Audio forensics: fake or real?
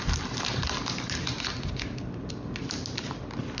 real